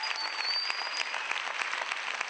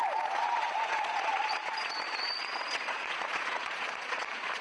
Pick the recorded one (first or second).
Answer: first